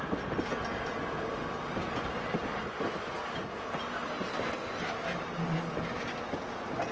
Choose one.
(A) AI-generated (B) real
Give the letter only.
B